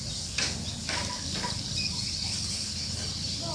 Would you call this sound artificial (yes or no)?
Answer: no